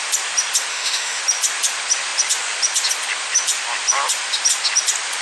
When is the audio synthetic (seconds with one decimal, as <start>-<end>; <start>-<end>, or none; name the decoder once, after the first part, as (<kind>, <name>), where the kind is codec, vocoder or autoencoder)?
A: 0.7-1.2 (autoencoder, DAC-VAE)